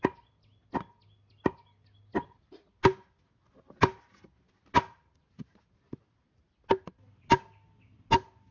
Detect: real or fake real